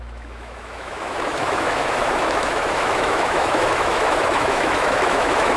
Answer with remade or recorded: remade